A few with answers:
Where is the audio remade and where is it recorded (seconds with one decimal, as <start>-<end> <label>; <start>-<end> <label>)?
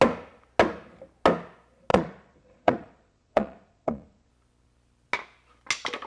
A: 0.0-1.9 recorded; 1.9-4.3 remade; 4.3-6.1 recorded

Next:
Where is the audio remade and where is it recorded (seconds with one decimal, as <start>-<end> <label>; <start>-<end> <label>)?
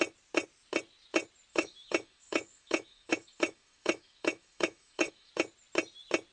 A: 0.0-1.5 recorded; 1.5-5.3 remade; 5.3-6.3 recorded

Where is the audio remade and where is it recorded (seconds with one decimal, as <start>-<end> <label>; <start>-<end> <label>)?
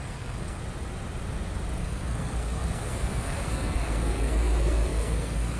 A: 0.0-0.6 remade; 0.6-1.8 recorded; 1.8-5.6 remade